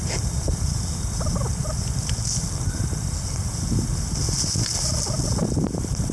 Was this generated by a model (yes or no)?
no